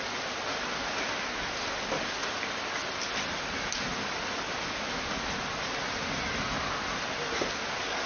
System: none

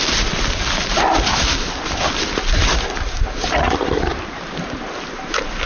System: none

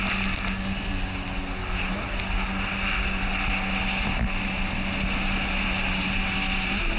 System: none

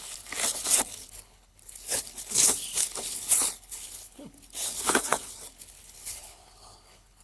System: codec, HILCodec